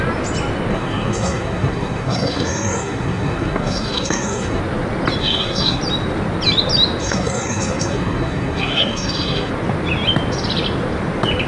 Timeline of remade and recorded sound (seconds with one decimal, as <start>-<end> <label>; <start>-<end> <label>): 0.0-0.7 recorded; 0.7-4.6 remade; 4.6-5.2 recorded; 5.2-5.8 remade; 5.8-7.0 recorded; 7.0-9.5 remade; 9.5-11.5 recorded